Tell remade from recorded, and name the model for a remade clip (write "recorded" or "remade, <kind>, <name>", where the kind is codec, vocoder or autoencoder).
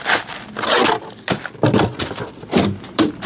remade, vocoder, BigVGAN v2